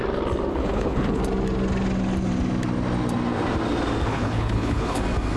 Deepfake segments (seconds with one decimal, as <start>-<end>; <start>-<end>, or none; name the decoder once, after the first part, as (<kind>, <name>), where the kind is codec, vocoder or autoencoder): 0.5-1.2 (codec, HILCodec); 4.1-5.0